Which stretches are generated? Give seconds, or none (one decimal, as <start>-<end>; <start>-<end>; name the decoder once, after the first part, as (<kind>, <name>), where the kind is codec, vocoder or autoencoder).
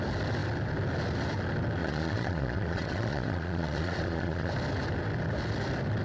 1.8-4.5 (vocoder, Vocos)